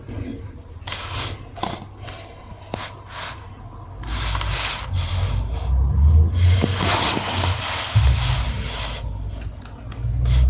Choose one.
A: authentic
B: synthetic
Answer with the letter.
A